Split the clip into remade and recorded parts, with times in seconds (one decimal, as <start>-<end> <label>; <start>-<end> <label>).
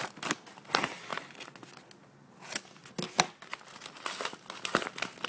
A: 0.0-5.3 recorded